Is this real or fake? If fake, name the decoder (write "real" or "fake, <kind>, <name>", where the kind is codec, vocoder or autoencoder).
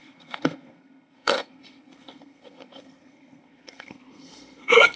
fake, codec, SNAC